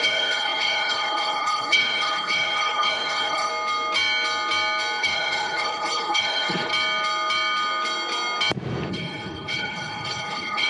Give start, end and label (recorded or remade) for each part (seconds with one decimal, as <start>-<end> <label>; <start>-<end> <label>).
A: 0.0-3.5 remade; 3.5-5.0 recorded; 5.0-6.7 remade; 6.7-8.9 recorded; 8.9-10.7 remade